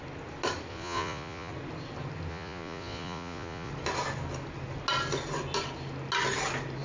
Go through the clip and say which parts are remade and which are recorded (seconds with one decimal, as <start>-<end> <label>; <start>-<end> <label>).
0.0-0.7 recorded; 0.7-1.5 remade; 1.5-2.3 recorded; 2.3-3.7 remade; 3.7-6.8 recorded